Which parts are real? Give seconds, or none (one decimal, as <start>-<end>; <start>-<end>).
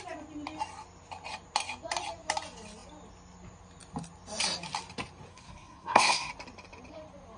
0.0-5.3; 6.3-7.4